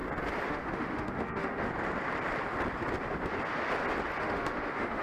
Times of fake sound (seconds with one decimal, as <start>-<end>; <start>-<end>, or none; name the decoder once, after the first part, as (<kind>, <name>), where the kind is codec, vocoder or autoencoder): 0.5-1.7 (autoencoder, DAC-VAE); 4.2-5.0

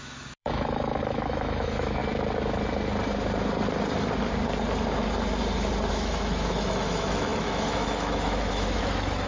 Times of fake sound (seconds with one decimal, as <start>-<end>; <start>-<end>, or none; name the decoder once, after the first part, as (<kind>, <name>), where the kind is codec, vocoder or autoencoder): 0.0-2.0 (autoencoder, DAC-VAE); 5.9-9.3

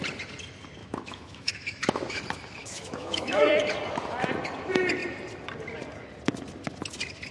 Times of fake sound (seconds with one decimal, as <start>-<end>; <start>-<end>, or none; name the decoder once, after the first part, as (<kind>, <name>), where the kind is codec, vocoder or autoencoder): 0.8-2.2 (autoencoder, DAC-VAE); 2.6-3.4

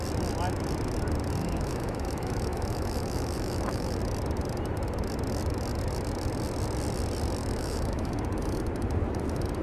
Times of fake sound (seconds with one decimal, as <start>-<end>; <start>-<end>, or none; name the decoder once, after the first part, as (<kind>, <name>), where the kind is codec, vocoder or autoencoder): 1.4-4.0 (autoencoder, DAC-VAE); 7.4-8.1

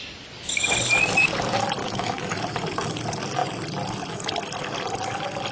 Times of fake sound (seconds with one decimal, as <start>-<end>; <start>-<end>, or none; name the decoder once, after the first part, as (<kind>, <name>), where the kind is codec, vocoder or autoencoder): 1.8-2.3 (autoencoder, DAC-VAE)

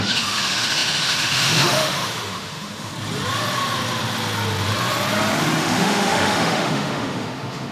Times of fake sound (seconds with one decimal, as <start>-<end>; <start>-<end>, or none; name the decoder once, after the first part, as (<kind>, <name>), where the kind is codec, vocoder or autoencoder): 0.0-2.9 (autoencoder, DAC-VAE); 5.6-7.7